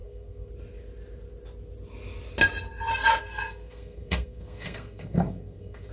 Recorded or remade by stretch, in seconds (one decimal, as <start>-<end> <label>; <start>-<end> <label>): 0.0-0.5 remade; 0.5-2.9 recorded; 2.9-5.9 remade